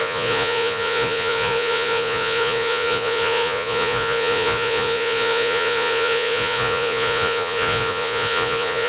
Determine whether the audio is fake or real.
fake